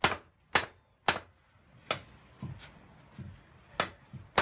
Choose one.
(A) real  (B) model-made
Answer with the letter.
A